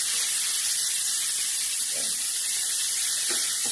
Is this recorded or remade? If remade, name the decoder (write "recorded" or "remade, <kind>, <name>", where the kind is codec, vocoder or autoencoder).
remade, vocoder, BigVGAN v2